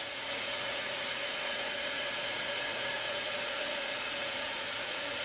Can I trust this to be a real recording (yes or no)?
no